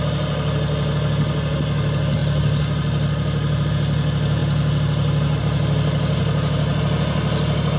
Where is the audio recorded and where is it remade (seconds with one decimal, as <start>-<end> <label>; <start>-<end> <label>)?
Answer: 0.0-6.2 recorded; 6.2-6.8 remade; 6.8-7.8 recorded

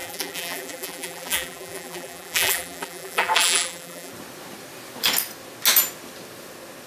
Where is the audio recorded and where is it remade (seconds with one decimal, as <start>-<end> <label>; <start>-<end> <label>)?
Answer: 0.0-4.1 remade; 4.1-6.9 recorded

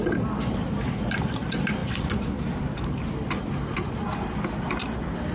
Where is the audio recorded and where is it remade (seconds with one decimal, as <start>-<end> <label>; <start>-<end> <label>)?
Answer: 0.0-5.3 recorded

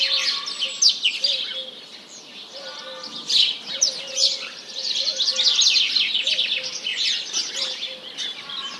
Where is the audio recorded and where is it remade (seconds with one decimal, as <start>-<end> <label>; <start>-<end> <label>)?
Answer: 0.0-4.2 recorded; 4.2-5.3 remade; 5.3-6.9 recorded; 6.9-7.5 remade; 7.5-8.8 recorded